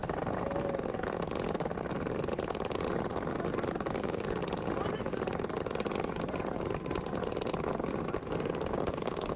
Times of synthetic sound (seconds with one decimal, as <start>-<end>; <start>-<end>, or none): 4.0-4.4; 8.9-9.4